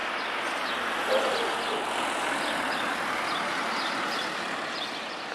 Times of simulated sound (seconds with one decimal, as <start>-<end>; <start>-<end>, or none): none